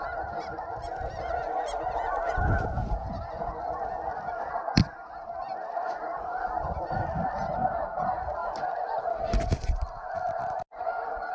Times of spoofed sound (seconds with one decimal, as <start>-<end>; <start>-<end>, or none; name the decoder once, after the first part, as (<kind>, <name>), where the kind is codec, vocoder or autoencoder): none